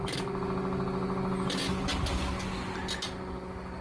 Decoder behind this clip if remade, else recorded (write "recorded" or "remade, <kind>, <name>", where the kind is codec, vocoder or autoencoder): recorded